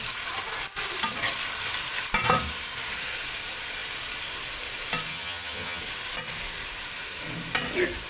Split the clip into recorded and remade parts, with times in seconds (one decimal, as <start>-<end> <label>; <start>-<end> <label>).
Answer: 0.0-5.1 recorded; 5.1-5.8 remade; 5.8-8.1 recorded